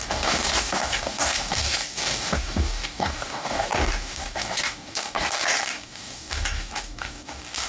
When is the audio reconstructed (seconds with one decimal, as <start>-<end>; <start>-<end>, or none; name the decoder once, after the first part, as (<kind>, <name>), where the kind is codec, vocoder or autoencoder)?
0.0-7.7 (codec, DAC)

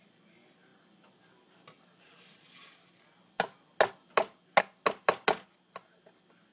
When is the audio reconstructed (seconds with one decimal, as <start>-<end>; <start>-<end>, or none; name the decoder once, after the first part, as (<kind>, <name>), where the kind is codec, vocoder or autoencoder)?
none

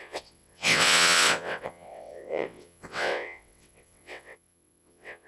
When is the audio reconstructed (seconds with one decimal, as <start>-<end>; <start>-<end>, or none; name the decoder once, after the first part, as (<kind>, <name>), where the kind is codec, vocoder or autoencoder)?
0.0-5.3 (vocoder, WaveNeXt)

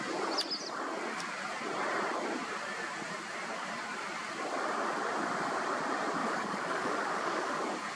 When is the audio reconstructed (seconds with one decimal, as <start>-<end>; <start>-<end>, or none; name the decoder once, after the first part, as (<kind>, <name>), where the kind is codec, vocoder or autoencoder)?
6.2-7.6 (codec, DAC)